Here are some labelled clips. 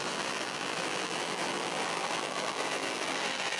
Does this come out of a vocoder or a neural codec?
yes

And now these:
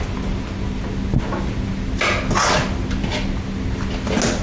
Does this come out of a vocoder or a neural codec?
no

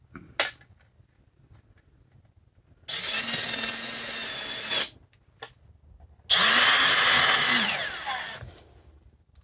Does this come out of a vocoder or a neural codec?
no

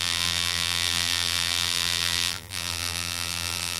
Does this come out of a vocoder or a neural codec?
yes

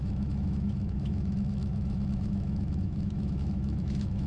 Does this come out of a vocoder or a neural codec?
yes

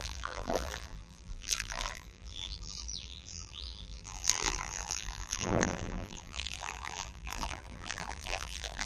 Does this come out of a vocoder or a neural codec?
yes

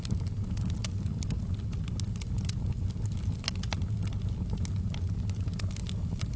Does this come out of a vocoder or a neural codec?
no